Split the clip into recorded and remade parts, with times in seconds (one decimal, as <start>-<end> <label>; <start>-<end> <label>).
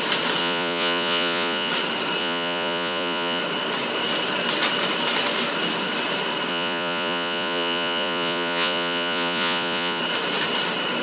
0.0-0.4 recorded; 0.4-1.7 remade; 1.7-2.2 recorded; 2.2-3.4 remade; 3.4-6.5 recorded; 6.5-10.0 remade; 10.0-11.0 recorded